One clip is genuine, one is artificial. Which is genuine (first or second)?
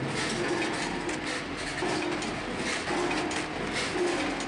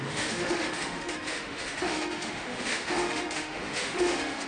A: first